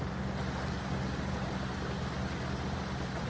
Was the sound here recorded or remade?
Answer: recorded